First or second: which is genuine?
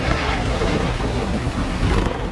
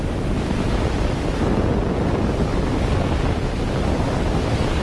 second